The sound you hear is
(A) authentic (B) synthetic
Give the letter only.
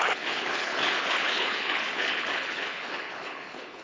B